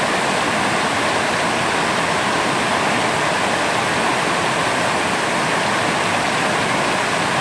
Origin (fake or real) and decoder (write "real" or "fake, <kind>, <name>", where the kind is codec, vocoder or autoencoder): real